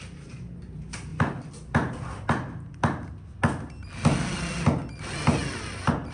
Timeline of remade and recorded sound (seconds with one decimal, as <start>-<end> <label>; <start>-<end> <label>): 0.0-1.1 recorded; 1.1-3.0 remade; 3.0-6.1 recorded